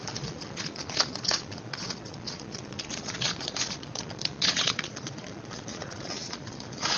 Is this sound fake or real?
fake